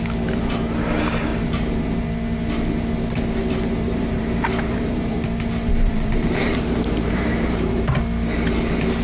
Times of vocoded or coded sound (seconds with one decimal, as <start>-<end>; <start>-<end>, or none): 1.3-2.1; 3.4-8.0